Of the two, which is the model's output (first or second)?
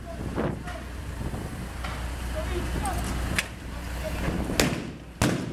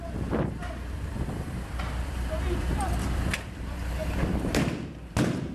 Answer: second